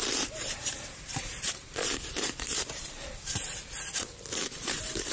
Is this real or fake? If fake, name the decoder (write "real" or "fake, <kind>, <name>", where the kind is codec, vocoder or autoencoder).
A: fake, vocoder, BigVGAN v2